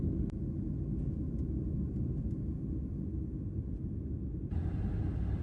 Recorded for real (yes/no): yes